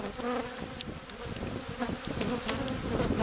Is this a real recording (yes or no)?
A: yes